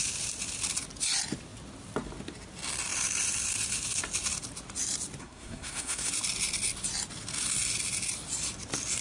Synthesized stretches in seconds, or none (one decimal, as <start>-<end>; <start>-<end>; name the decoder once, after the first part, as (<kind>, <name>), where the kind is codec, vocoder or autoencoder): 5.2-6.1 (codec, SNAC)